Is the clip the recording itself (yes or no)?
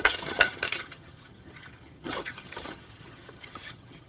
no